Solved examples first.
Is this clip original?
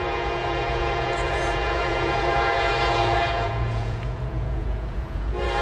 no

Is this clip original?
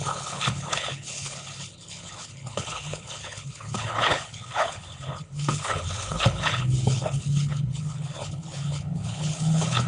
no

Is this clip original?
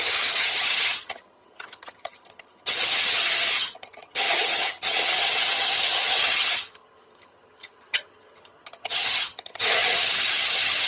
no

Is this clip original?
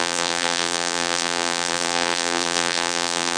no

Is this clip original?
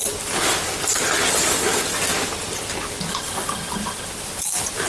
yes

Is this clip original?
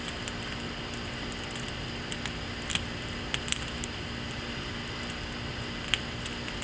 yes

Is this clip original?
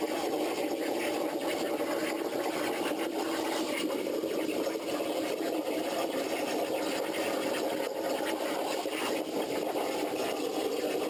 yes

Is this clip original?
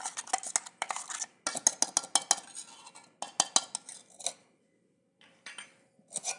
yes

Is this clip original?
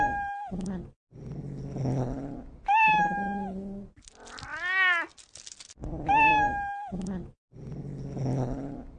yes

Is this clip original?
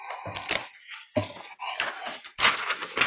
yes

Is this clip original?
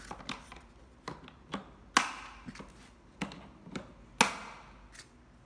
yes